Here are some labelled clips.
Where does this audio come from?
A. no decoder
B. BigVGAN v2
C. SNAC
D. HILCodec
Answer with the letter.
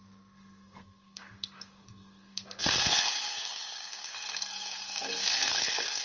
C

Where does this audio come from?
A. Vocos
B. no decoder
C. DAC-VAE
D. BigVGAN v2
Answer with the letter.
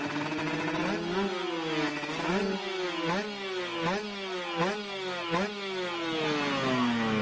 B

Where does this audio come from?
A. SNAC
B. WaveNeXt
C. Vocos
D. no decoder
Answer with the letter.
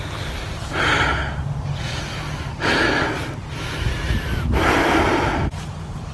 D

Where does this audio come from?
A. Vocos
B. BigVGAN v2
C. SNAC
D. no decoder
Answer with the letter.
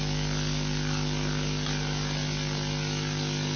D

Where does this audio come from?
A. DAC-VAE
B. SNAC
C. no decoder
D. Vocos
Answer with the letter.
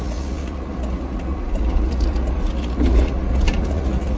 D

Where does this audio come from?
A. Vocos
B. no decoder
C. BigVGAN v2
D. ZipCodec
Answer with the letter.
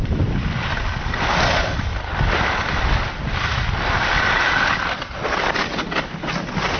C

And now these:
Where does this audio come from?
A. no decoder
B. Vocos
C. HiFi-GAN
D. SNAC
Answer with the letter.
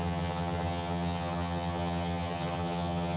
C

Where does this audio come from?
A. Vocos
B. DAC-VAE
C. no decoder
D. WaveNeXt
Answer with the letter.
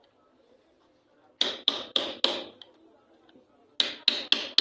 C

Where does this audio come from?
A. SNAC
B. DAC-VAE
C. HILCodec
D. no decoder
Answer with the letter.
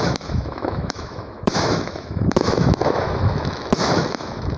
B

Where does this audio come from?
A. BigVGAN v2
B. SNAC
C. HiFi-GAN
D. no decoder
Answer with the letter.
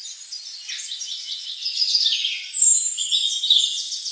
D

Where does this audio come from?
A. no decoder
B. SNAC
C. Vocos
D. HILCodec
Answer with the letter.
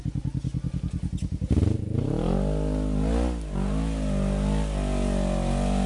A